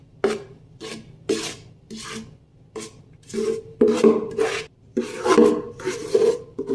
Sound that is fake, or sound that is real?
real